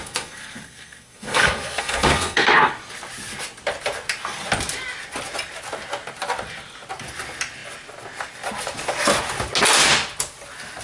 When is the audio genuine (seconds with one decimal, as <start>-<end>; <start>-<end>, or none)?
2.7-10.8